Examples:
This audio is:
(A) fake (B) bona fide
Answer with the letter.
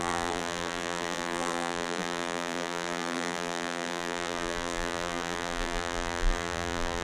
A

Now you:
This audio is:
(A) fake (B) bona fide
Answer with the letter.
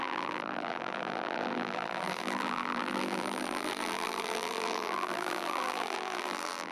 A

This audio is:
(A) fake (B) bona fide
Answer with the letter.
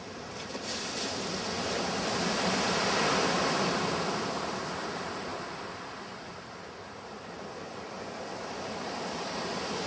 A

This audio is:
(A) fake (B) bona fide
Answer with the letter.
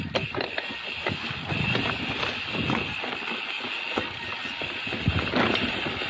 B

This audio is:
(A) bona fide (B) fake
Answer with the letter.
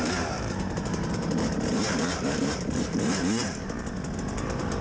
B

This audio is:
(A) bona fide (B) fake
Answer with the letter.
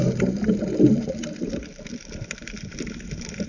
B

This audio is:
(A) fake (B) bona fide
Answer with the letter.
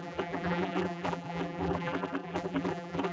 A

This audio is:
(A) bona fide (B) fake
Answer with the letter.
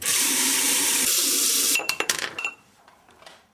B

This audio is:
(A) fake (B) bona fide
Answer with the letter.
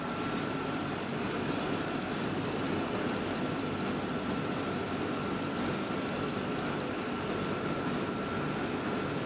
B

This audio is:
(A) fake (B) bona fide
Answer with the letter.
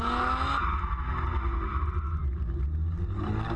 B